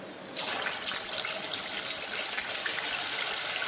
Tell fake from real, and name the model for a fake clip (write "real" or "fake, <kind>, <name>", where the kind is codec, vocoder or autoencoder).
real